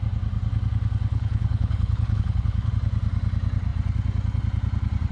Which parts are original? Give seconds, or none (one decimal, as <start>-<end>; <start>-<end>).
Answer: 0.0-1.1; 2.7-5.1